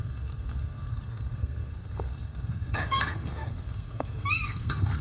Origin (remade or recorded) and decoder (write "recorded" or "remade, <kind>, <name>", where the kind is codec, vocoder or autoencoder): remade, codec, SNAC